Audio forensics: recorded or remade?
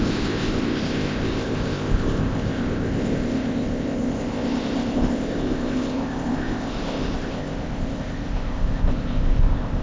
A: remade